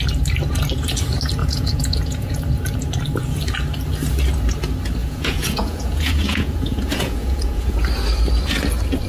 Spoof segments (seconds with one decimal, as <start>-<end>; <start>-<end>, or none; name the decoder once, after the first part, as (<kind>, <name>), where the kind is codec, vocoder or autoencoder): 1.4-2.4 (vocoder, Vocos); 5.0-7.8